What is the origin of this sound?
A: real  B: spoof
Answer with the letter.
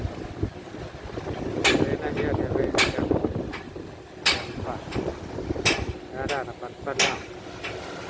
A